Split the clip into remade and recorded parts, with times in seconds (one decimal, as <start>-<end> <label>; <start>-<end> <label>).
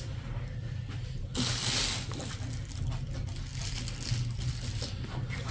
0.0-5.5 recorded